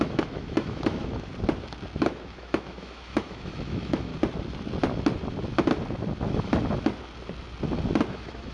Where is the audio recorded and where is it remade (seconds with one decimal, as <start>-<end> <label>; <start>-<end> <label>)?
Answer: 0.0-1.3 remade; 1.3-2.0 recorded; 2.0-4.1 remade; 4.1-8.1 recorded; 8.1-8.5 remade